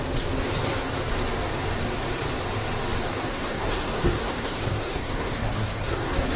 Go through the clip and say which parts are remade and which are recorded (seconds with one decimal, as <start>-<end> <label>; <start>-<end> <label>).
0.0-3.3 recorded; 3.3-6.4 remade